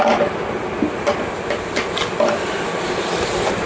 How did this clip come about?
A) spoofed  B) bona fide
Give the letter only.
B